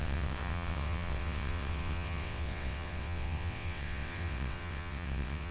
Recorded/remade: remade